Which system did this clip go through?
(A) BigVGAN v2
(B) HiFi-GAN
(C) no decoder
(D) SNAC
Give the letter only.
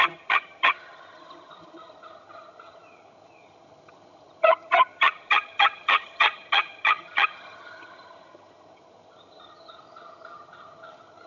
B